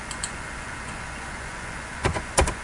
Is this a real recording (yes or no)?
no